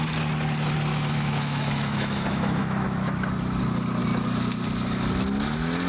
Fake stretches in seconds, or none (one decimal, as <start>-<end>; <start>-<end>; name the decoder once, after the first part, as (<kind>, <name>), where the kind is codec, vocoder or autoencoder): 0.9-3.1 (autoencoder, DAC-VAE)